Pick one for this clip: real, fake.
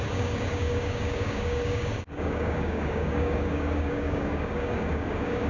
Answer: fake